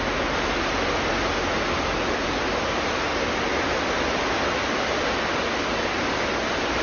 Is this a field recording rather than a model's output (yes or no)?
yes